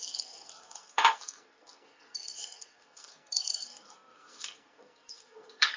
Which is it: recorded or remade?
remade